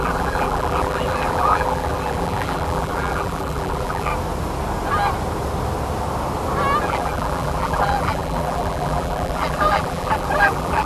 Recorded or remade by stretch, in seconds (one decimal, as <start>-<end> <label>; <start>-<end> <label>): 0.0-4.1 remade; 4.1-6.8 recorded; 6.8-10.9 remade